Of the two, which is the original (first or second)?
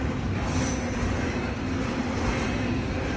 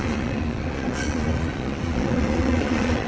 first